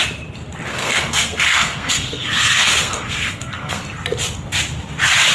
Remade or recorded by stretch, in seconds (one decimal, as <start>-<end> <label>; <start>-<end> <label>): 0.0-0.7 recorded; 0.7-3.8 remade; 3.8-5.3 recorded